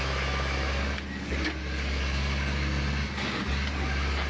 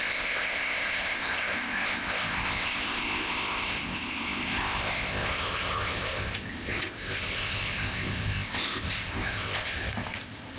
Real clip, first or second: first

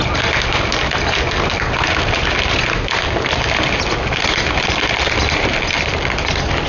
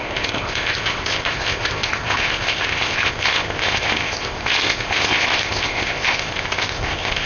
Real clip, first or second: first